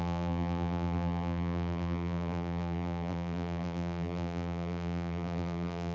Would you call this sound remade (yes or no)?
yes